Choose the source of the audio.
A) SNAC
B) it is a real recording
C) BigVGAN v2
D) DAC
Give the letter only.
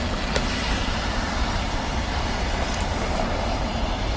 C